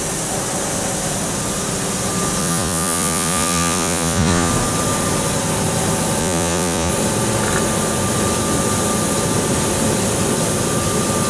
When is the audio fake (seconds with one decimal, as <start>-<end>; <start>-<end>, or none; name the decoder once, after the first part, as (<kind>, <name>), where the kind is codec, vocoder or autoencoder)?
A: 2.4-4.5 (vocoder, Vocos); 6.2-6.9

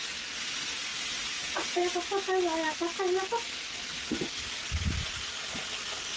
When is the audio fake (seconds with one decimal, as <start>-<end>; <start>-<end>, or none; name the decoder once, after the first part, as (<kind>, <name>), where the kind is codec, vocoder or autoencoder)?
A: none

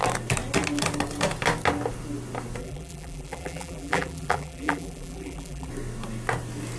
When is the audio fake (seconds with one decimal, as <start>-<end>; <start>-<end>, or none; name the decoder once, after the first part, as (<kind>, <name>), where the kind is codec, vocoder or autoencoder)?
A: 2.6-5.7 (vocoder, BigVGAN v2)

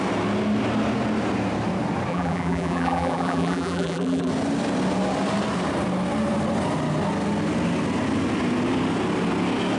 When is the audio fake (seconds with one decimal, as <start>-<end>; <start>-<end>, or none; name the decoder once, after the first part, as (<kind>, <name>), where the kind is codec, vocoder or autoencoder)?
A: 2.1-4.3 (vocoder, BigVGAN v2)

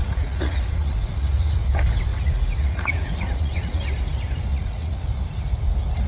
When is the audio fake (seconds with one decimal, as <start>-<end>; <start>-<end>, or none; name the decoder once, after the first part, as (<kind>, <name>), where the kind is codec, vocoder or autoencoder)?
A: 0.0-1.7 (vocoder, Vocos); 2.1-3.8; 4.5-5.0

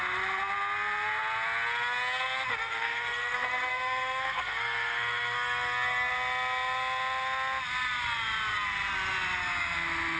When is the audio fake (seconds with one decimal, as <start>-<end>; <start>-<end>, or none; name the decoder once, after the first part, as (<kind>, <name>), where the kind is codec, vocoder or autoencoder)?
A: 2.5-6.1 (codec, SNAC)

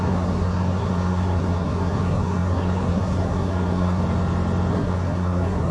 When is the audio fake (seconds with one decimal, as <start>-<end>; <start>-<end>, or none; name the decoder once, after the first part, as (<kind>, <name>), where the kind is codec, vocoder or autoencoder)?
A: 0.0-4.0 (codec, SNAC); 4.7-5.7

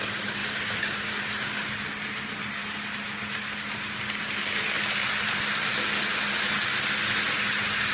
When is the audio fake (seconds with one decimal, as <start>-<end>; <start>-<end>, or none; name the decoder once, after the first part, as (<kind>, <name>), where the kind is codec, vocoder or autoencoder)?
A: none